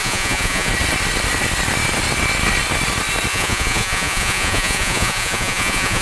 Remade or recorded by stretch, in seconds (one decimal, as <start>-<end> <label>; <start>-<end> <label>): 0.0-0.7 remade; 0.7-3.3 recorded; 3.3-6.0 remade